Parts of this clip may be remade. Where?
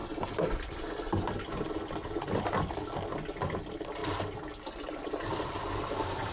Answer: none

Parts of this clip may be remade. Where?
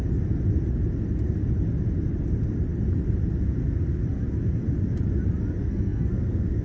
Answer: 5.6-6.6 (codec, SNAC)